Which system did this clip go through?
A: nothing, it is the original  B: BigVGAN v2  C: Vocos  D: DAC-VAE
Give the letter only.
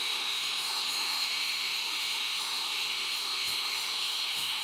D